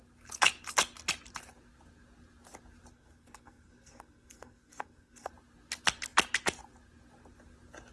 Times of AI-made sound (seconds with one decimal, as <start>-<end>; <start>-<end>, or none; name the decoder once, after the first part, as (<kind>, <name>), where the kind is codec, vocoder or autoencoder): 2.9-5.3 (codec, SNAC)